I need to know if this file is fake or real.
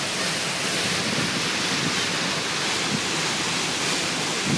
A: real